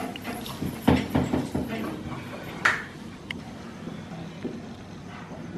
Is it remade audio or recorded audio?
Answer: recorded